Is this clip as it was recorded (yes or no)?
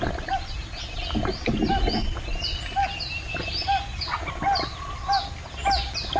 yes